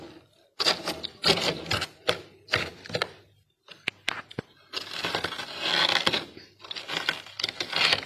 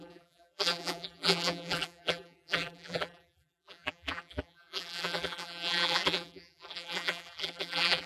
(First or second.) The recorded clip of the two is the first